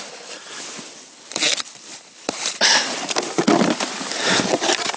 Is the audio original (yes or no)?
no